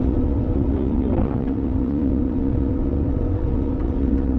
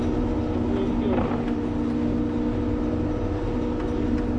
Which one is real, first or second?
second